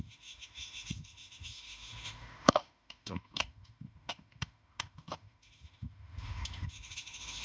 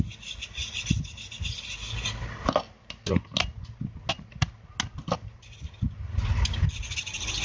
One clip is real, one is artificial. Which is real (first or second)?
second